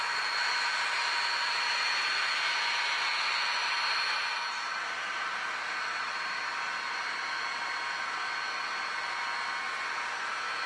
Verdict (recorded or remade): recorded